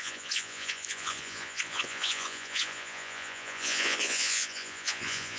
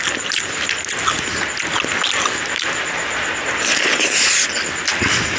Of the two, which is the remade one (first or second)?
first